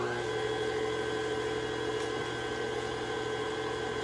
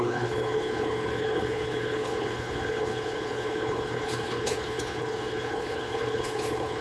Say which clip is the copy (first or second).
second